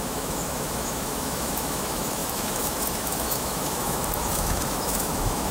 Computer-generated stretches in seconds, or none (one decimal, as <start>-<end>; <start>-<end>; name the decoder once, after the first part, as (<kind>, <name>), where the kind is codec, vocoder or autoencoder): 0.0-5.5 (autoencoder, DAC-VAE)